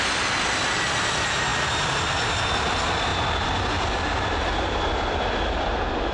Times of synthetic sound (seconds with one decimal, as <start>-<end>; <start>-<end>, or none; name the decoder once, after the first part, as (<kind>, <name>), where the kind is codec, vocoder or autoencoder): none